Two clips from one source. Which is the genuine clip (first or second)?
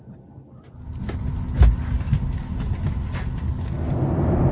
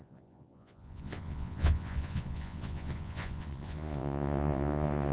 first